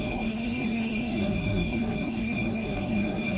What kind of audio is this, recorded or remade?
remade